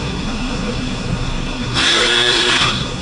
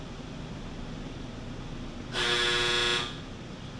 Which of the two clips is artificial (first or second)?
first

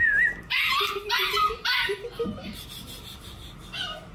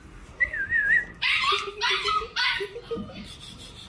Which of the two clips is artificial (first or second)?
second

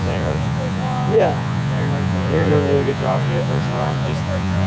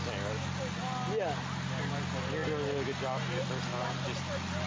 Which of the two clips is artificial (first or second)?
first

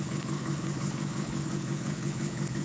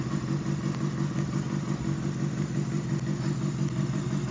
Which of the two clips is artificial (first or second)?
first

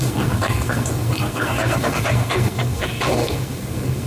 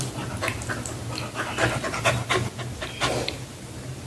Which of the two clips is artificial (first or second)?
first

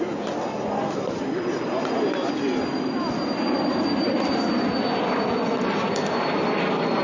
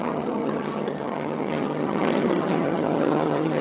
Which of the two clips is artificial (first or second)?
second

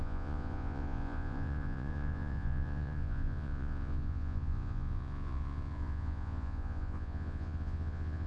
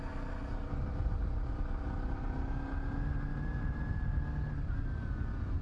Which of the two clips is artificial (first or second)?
first